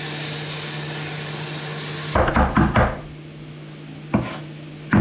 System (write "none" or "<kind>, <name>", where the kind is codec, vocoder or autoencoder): none